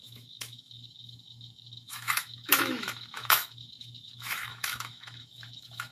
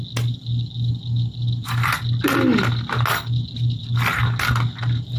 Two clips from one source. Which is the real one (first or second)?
second